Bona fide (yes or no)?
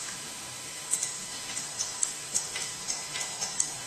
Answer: no